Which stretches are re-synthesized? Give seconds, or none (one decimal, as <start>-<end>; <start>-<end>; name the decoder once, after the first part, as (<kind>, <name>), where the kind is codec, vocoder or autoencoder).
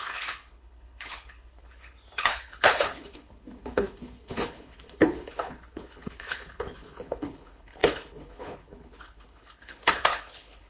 0.0-10.7 (codec, HILCodec)